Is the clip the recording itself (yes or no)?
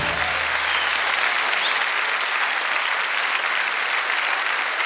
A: yes